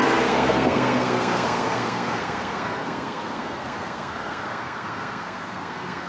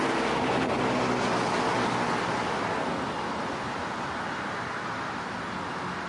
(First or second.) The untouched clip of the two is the second